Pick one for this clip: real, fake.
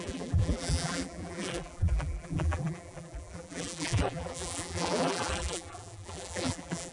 fake